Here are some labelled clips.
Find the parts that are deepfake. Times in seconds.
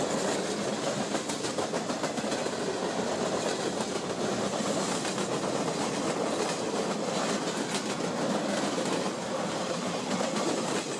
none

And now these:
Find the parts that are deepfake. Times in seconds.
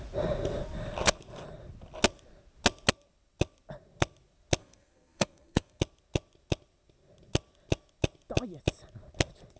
4.6-5.8